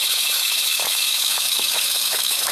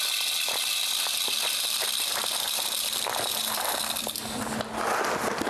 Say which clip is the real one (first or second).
second